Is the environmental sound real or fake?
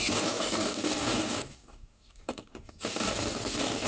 fake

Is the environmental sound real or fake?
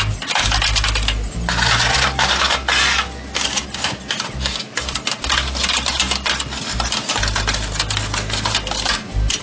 real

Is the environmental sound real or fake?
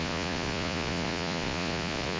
fake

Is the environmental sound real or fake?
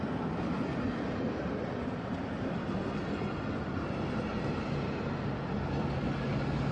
real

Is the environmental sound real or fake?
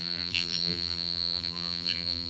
fake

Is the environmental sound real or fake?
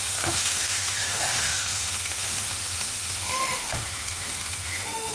fake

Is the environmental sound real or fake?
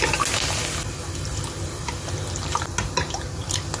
real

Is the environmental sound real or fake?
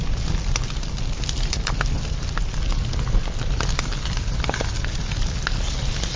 real